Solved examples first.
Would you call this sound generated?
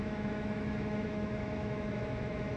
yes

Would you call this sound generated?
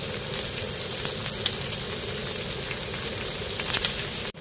no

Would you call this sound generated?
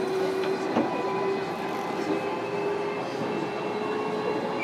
no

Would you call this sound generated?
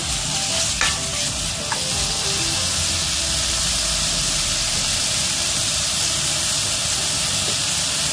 no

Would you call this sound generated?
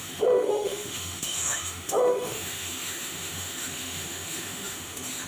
yes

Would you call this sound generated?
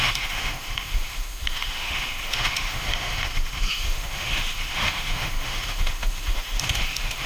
yes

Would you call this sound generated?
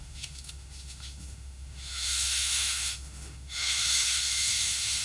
yes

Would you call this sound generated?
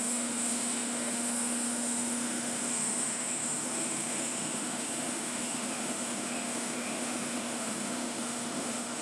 yes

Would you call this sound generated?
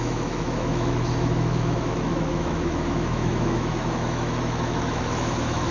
yes